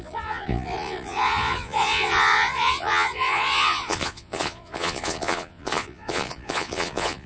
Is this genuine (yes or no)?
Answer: no